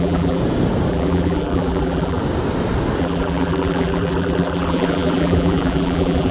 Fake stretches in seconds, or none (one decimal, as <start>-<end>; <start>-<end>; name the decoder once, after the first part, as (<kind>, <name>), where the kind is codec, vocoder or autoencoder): 0.0-0.4 (vocoder, BigVGAN v2); 0.9-2.2; 3.0-6.3